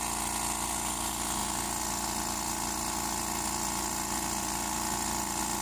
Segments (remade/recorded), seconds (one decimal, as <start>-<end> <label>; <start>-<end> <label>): 0.0-5.6 recorded